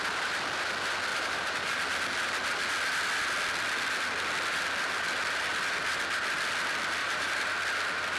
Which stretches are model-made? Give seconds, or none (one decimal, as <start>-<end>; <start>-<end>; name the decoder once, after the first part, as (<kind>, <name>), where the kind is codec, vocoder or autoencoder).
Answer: 1.1-1.9 (vocoder, BigVGAN v2); 7.0-7.5